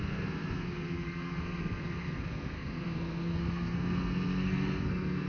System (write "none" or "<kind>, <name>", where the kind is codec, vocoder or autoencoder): codec, SNAC